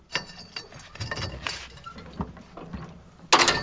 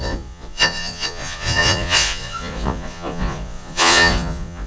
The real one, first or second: first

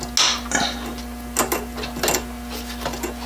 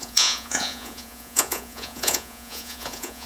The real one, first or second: first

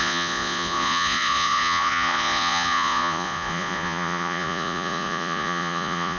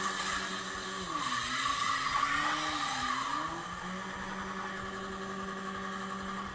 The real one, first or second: second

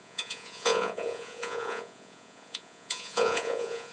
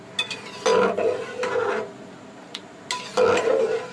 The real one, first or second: second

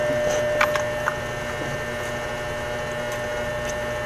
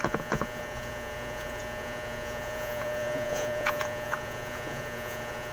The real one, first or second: first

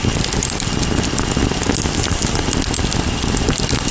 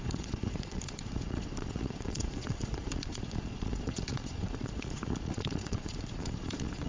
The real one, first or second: first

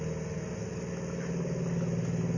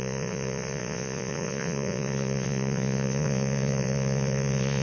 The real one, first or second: first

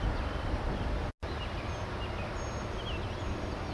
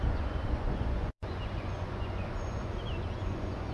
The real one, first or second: first